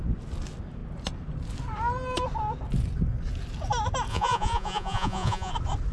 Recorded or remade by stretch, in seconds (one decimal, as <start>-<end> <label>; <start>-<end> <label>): 0.0-4.1 recorded; 4.1-5.5 remade; 5.5-5.9 recorded

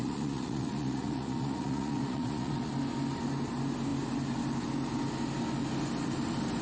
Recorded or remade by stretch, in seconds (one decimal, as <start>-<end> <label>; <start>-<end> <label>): 0.0-2.7 remade; 2.7-6.6 recorded